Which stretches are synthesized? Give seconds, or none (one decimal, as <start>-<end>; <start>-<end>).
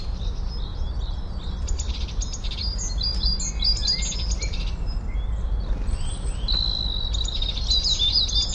none